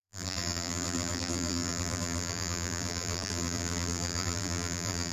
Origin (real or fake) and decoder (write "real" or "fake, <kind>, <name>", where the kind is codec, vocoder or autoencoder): fake, vocoder, BigVGAN v2